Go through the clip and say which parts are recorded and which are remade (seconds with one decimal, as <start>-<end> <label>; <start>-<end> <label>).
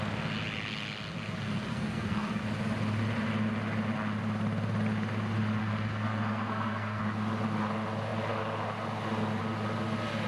0.0-1.7 recorded; 1.7-2.4 remade; 2.4-5.6 recorded; 5.6-7.0 remade; 7.0-10.3 recorded